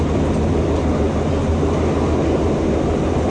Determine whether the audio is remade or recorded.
recorded